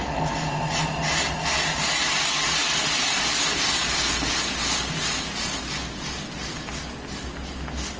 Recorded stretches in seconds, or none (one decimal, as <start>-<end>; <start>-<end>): 0.0-8.0